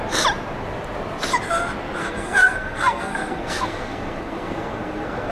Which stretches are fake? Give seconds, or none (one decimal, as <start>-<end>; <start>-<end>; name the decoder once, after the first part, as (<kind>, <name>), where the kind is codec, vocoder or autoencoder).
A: 2.0-5.3 (codec, SNAC)